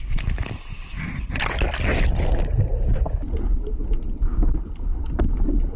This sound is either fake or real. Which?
real